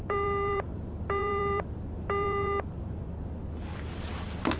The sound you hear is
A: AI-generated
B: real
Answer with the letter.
A